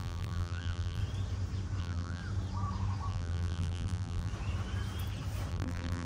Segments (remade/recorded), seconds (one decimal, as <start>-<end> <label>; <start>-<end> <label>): 0.0-1.0 remade; 1.0-1.8 recorded; 1.8-2.2 remade; 2.2-3.1 recorded; 3.1-4.3 remade; 4.3-5.5 recorded; 5.5-6.1 remade

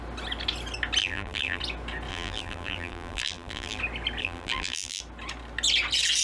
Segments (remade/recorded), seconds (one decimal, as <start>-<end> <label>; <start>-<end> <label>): 0.0-1.0 recorded; 1.0-1.6 remade; 1.6-2.1 recorded; 2.1-3.8 remade; 3.8-4.2 recorded; 4.2-5.0 remade; 5.0-6.2 recorded

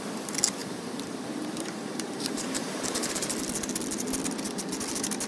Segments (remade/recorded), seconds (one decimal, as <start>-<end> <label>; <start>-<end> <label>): 0.0-0.6 recorded; 0.6-3.1 remade; 3.1-5.3 recorded

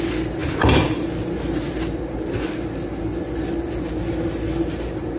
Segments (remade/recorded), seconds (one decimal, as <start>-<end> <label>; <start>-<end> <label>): 0.0-5.2 recorded

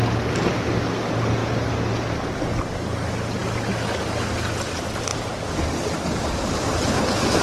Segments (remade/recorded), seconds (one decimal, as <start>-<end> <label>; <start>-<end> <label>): 0.0-7.4 recorded

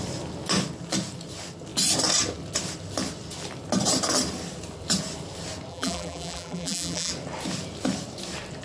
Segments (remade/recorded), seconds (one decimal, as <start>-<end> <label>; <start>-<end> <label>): 0.0-5.7 recorded; 5.7-7.1 remade; 7.1-8.6 recorded